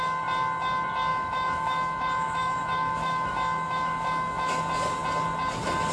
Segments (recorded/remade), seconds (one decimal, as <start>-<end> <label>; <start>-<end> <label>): 0.0-1.1 recorded; 1.1-4.6 remade; 4.6-5.9 recorded